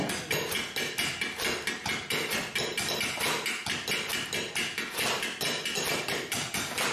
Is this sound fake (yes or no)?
no